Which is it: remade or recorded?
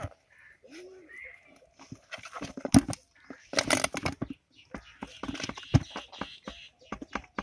recorded